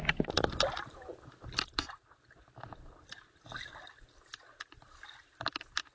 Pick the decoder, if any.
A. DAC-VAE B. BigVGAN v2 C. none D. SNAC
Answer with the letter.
C